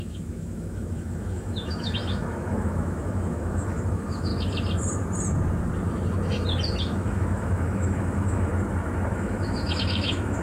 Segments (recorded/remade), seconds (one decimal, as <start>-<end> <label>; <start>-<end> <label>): 0.0-4.3 remade; 4.3-6.8 recorded; 6.8-8.5 remade; 8.5-9.1 recorded; 9.1-10.4 remade